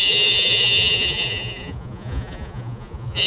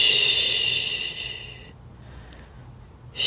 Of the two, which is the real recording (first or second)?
second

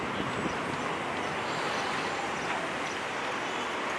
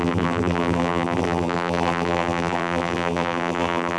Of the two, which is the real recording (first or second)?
first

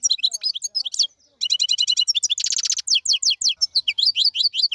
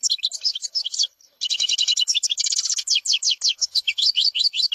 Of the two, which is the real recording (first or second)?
first